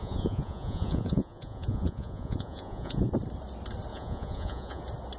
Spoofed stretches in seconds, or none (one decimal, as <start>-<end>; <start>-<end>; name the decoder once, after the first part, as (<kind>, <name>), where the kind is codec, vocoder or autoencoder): 0.0-3.1 (vocoder, Vocos); 3.9-4.8